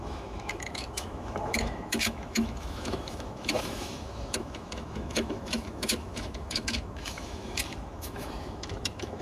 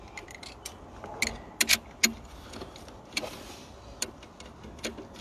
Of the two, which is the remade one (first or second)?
first